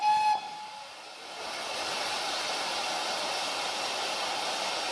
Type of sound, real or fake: real